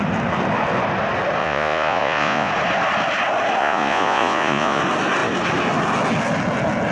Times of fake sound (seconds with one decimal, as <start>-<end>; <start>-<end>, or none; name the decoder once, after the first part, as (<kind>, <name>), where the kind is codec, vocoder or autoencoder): 1.4-2.5 (vocoder, Vocos); 3.6-4.8